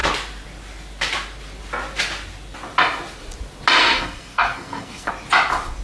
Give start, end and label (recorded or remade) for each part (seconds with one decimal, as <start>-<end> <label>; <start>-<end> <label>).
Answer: 0.0-3.8 recorded; 3.8-5.1 remade; 5.1-5.8 recorded